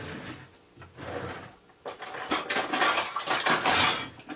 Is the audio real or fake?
real